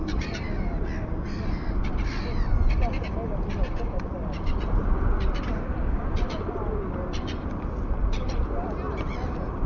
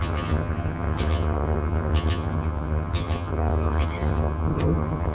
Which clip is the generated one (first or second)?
second